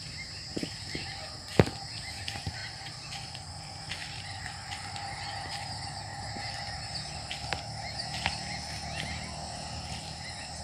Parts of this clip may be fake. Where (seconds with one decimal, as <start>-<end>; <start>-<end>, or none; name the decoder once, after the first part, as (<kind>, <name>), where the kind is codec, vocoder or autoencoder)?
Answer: 2.6-3.6 (vocoder, BigVGAN v2)